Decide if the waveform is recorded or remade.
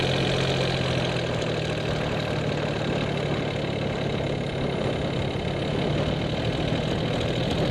recorded